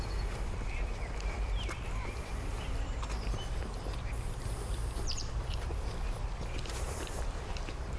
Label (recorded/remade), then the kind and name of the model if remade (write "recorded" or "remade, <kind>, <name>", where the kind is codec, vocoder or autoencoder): remade, vocoder, BigVGAN v2